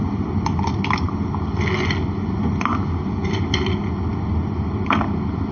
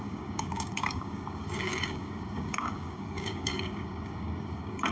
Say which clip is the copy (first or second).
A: second